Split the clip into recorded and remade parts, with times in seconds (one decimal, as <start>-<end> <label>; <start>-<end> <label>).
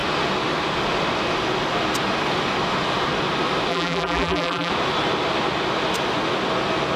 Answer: 0.0-3.7 recorded; 3.7-4.7 remade; 4.7-7.0 recorded